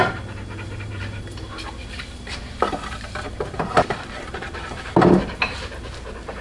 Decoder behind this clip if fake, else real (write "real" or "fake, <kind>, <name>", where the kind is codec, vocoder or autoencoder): fake, vocoder, BigVGAN v2